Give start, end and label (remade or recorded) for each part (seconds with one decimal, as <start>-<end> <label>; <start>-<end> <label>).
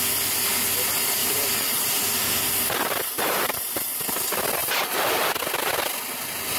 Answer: 0.0-1.2 recorded; 1.2-3.6 remade; 3.6-6.6 recorded